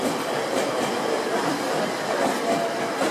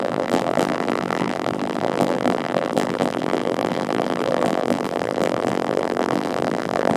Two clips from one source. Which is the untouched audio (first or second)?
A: first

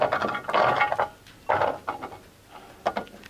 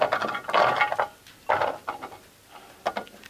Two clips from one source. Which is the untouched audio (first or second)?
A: first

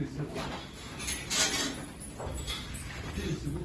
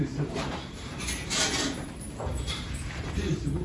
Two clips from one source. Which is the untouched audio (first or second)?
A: first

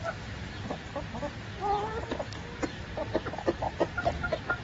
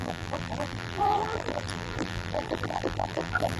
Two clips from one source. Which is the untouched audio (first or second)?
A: first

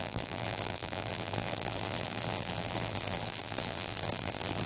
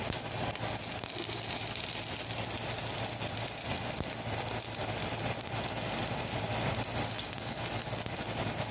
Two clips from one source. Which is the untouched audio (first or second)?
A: second